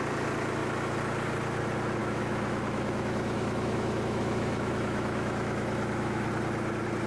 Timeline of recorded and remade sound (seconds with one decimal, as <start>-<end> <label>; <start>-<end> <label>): 0.0-2.0 recorded; 2.0-6.3 remade; 6.3-7.1 recorded